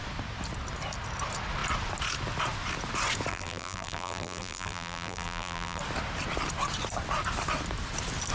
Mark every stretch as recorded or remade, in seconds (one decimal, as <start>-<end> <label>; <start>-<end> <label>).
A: 0.0-3.3 recorded; 3.3-5.8 remade; 5.8-8.3 recorded